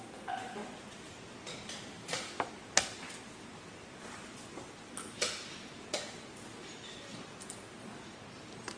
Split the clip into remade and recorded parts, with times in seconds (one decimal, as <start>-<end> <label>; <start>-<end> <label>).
0.0-8.8 recorded